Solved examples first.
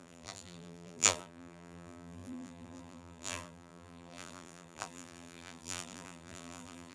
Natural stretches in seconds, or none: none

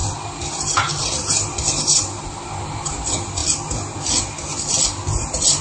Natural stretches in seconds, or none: 0.0-5.6

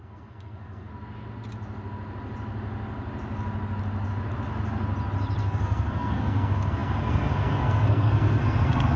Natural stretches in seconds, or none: 0.9-5.4

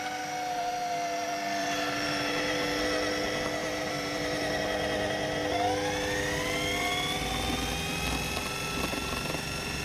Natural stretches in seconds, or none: 0.0-1.6; 2.8-3.6; 4.6-9.8

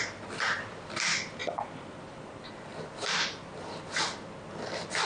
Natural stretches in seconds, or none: 1.4-2.0